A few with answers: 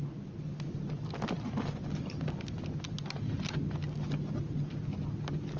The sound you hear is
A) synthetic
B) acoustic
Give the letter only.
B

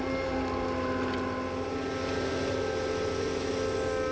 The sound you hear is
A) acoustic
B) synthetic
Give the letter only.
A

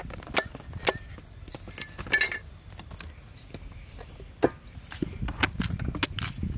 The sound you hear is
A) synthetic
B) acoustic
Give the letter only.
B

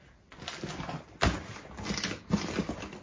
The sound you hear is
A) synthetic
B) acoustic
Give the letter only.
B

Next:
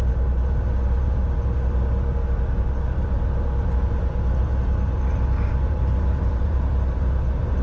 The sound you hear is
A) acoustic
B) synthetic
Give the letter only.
B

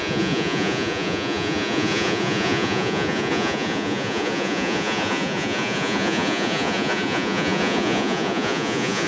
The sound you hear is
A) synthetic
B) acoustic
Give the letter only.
A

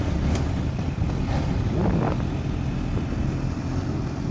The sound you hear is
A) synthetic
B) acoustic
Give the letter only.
B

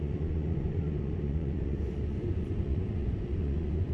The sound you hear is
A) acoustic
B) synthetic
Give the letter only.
B